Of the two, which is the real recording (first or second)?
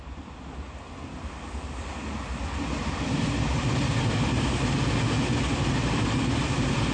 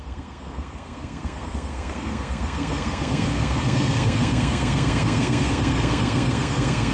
first